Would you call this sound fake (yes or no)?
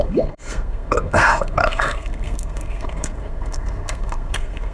yes